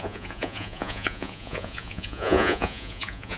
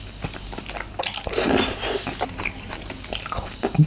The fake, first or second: first